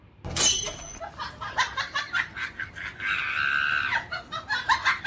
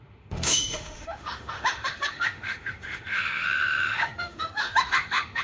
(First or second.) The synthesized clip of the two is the second